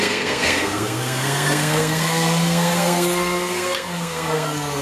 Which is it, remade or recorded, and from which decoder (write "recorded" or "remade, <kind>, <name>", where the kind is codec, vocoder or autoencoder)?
remade, codec, SNAC